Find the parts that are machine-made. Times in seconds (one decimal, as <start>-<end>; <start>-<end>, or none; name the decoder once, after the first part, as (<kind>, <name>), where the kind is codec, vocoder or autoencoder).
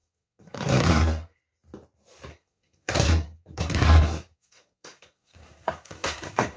0.0-1.4 (codec, SNAC); 2.3-6.6